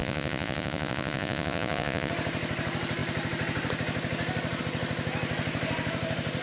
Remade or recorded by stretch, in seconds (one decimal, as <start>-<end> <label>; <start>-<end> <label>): 0.0-2.1 remade; 2.1-6.4 recorded